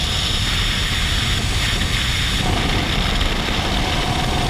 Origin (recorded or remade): recorded